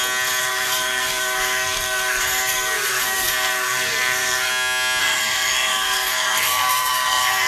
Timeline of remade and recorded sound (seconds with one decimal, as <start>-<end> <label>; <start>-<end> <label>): 0.0-0.4 recorded; 0.4-4.5 remade; 4.5-5.0 recorded; 5.0-7.5 remade